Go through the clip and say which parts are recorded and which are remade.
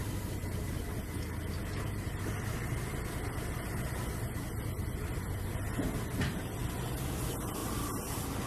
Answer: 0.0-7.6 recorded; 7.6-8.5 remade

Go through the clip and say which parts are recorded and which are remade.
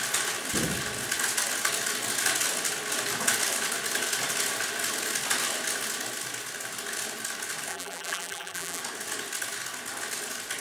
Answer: 0.0-7.7 recorded; 7.7-8.8 remade; 8.8-10.6 recorded